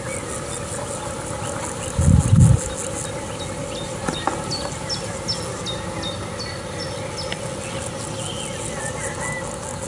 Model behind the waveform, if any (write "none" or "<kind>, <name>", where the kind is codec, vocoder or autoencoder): none